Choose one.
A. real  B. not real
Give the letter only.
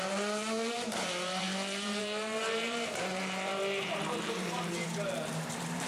B